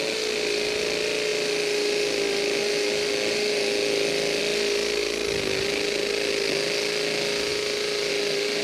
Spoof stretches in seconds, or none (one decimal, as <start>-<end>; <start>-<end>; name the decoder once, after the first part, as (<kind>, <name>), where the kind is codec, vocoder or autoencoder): none